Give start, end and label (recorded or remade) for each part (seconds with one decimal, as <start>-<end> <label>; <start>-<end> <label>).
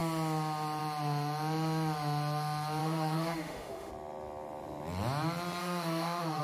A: 0.0-2.8 recorded; 2.8-3.9 remade; 3.9-5.6 recorded; 5.6-6.4 remade